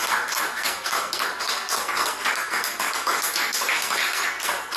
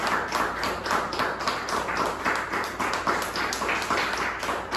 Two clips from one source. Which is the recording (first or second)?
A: second